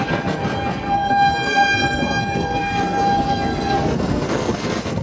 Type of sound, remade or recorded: remade